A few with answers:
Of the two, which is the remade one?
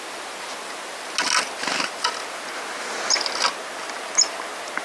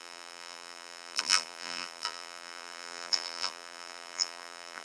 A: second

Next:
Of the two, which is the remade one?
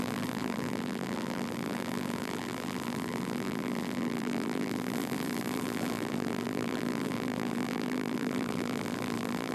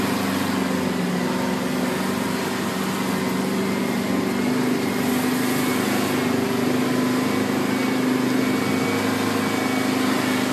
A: first